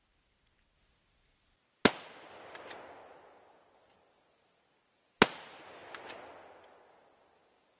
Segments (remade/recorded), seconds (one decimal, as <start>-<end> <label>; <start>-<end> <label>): 0.0-7.8 recorded